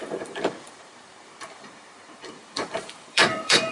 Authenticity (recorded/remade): remade